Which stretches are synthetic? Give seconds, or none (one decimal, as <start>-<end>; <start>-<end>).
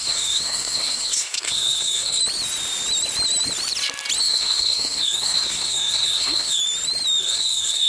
0.0-2.2; 4.2-6.6; 7.2-7.9